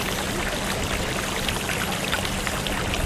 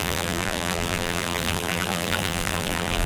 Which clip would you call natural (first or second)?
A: first